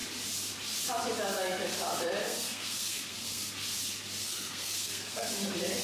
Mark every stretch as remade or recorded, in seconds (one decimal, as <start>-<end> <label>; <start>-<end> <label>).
0.0-2.2 recorded; 2.2-3.5 remade; 3.5-4.2 recorded; 4.2-5.3 remade; 5.3-5.8 recorded